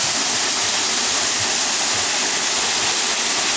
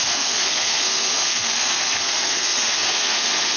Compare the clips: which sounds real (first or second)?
first